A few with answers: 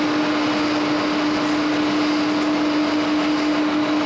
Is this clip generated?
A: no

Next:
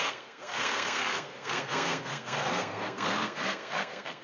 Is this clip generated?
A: yes